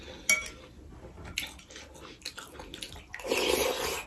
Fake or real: real